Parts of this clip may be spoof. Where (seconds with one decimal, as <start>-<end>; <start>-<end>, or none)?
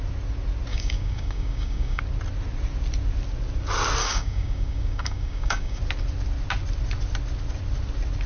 0.7-2.0; 4.0-5.8